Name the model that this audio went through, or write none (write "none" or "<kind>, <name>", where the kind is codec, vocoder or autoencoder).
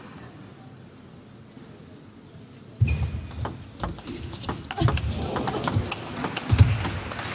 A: none